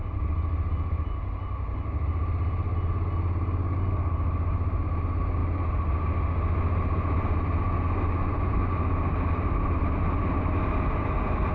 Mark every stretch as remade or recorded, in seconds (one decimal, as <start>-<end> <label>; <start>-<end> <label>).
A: 0.0-11.5 recorded